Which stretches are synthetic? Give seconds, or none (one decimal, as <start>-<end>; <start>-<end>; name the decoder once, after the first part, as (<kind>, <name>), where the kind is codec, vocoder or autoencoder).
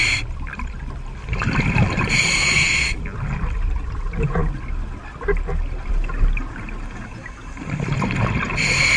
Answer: 2.4-3.0 (vocoder, Vocos)